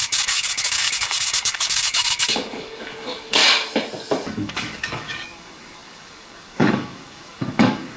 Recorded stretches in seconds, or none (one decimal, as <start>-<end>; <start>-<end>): 3.4-4.3